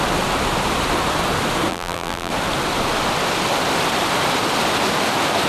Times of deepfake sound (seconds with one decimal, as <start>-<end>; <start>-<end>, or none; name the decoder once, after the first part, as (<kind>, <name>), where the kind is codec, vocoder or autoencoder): 1.7-2.3 (vocoder, BigVGAN v2)